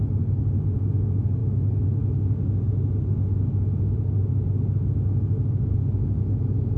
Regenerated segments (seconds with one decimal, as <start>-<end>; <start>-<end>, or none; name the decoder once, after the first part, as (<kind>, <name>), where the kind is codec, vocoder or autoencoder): none